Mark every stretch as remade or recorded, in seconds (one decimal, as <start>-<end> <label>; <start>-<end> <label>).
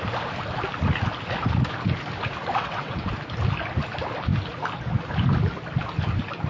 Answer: 0.0-2.4 recorded; 2.4-3.1 remade; 3.1-6.5 recorded